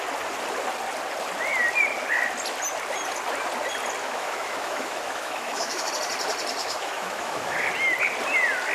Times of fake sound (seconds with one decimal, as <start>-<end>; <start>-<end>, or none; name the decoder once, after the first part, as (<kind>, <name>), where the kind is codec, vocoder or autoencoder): 4.0-5.9 (autoencoder, DAC-VAE); 6.6-7.7